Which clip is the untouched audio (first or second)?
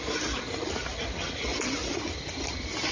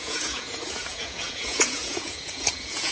first